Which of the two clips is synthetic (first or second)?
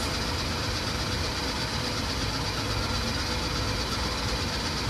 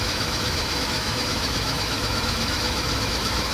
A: second